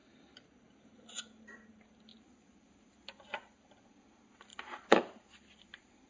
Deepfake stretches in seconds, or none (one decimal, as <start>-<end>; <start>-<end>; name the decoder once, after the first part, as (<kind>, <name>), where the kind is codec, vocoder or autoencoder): 0.0-1.7 (vocoder, BigVGAN v2); 4.5-5.0